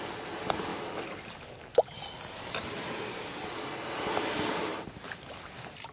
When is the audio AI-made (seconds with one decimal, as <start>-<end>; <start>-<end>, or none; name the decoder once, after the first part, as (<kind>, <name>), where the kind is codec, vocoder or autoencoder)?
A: none